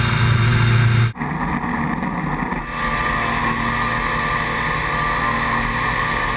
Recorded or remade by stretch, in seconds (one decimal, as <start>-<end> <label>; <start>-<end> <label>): 0.0-6.4 recorded